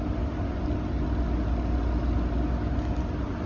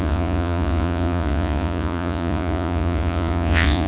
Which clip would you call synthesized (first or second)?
second